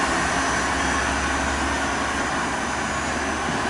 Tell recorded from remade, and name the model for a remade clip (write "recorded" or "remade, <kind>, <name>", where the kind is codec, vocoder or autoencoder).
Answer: recorded